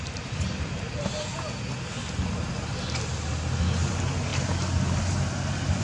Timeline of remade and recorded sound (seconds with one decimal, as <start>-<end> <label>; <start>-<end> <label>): 0.0-1.3 remade; 1.3-3.9 recorded; 3.9-4.3 remade; 4.3-5.8 recorded